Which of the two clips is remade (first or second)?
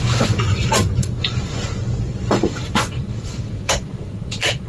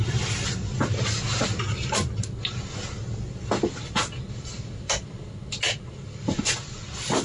first